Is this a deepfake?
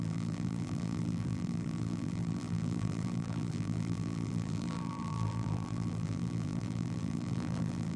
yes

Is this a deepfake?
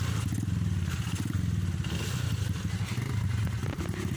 no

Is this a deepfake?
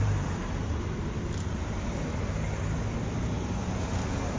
yes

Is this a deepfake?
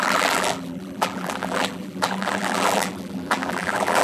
yes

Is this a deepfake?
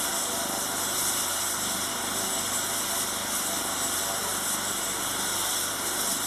no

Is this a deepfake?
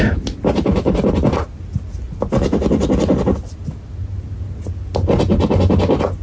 no